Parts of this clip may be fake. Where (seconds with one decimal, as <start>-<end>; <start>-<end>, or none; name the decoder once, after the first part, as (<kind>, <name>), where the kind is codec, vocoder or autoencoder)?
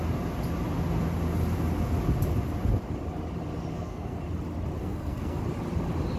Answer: 3.7-4.2 (codec, SNAC); 4.8-5.4